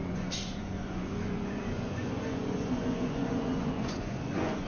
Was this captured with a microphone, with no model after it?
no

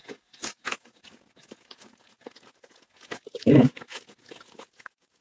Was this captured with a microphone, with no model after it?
no